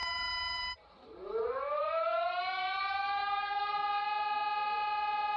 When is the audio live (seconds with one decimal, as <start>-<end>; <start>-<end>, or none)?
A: 2.4-3.2; 3.7-5.4